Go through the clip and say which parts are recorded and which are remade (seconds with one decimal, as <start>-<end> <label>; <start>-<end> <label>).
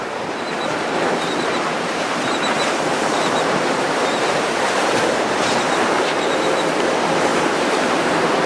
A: 0.0-8.5 remade